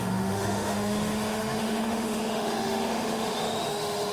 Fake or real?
fake